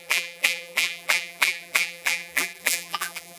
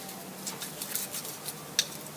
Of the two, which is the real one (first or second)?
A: second